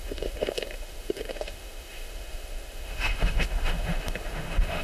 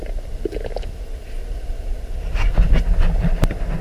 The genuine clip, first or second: second